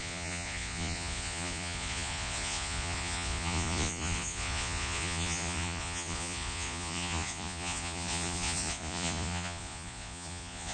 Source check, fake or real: fake